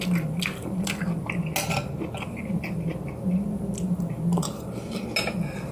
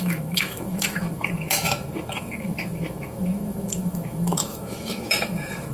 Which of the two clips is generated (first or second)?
second